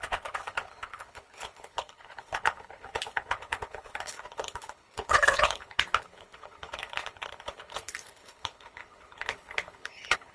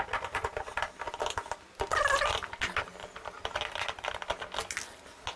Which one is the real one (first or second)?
second